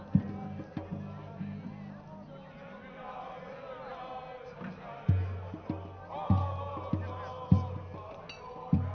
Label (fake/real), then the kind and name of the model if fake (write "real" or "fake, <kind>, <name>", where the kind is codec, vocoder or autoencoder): real